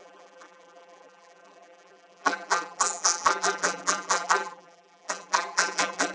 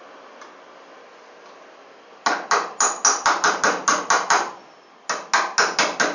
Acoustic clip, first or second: second